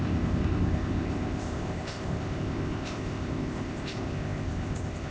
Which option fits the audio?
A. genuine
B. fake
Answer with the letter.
B